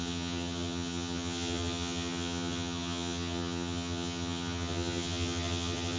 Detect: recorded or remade remade